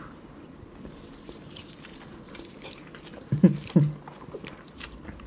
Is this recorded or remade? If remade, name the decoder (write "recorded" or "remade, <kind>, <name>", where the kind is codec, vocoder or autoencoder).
remade, vocoder, BigVGAN v2